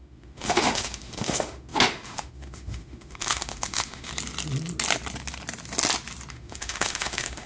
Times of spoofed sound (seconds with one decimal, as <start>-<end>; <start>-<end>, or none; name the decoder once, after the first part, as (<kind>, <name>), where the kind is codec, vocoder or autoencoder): 0.0-4.1 (autoencoder, DAC-VAE); 6.3-7.5